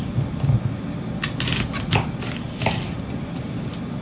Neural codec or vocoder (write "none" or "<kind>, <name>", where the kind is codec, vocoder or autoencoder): none